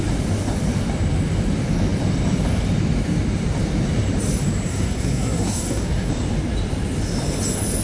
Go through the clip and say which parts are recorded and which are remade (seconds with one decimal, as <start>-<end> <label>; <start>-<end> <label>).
0.0-4.7 recorded; 4.7-6.1 remade; 6.1-7.8 recorded